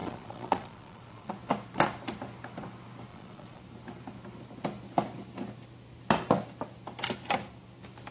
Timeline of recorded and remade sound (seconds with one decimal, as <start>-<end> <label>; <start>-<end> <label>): 0.0-1.3 remade; 1.3-3.1 recorded; 3.1-3.6 remade; 3.6-8.1 recorded